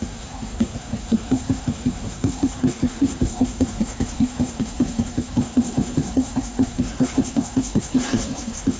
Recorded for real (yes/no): no